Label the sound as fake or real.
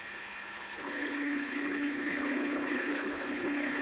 fake